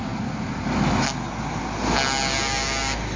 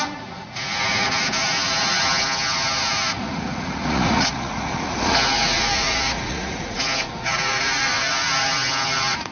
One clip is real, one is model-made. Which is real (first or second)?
first